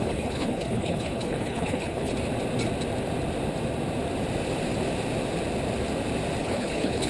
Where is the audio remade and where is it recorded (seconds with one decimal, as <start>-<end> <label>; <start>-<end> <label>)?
0.0-2.1 remade; 2.1-6.4 recorded; 6.4-7.1 remade